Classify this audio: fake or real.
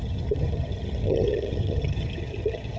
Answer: fake